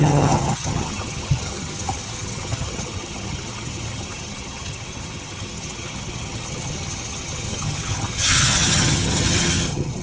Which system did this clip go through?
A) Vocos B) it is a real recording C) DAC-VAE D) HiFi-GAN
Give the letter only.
D